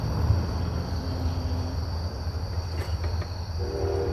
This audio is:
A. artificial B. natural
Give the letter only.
B